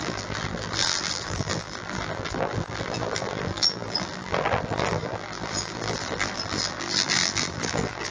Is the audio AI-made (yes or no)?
yes